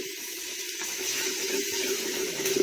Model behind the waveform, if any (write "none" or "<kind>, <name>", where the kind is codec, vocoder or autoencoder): autoencoder, DAC-VAE